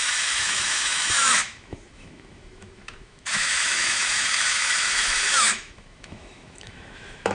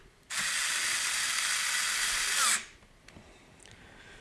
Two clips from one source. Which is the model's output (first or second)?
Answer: first